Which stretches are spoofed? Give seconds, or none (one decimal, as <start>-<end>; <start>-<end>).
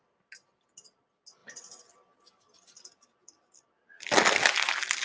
none